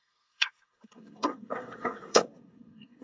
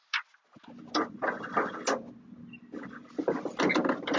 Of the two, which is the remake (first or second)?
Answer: first